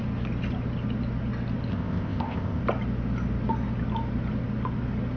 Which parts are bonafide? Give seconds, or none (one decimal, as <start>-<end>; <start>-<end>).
0.0-1.7; 2.6-5.2